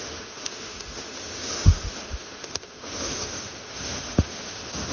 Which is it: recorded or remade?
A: remade